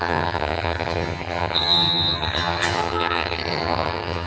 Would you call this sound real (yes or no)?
no